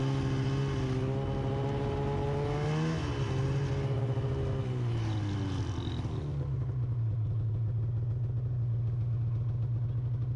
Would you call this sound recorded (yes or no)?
yes